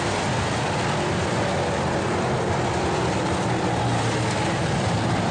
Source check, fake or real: fake